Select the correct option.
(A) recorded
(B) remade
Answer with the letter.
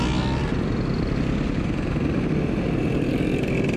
A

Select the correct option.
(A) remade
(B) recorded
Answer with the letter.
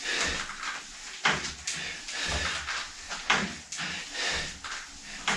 B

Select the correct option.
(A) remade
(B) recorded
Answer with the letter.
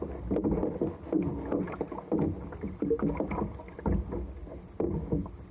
B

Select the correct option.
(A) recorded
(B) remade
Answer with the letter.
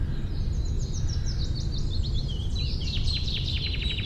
A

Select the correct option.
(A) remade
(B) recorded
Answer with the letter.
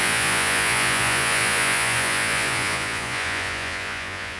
A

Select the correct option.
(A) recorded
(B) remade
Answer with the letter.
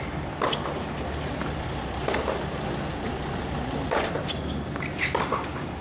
A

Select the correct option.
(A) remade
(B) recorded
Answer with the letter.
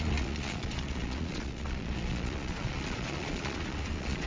A